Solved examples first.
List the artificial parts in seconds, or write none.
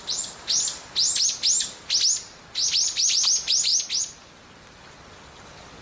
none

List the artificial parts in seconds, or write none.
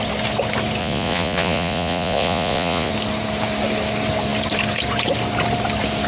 0.8-2.9 (vocoder, Vocos)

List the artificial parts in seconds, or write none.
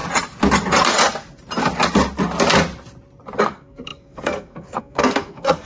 3.4-5.7 (codec, SNAC)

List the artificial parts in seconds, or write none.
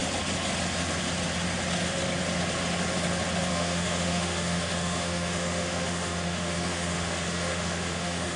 3.5-8.4 (autoencoder, DAC-VAE)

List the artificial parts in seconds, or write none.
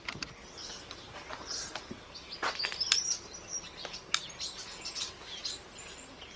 none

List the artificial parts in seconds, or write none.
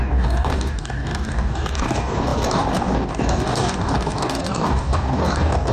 0.0-5.7 (codec, DAC)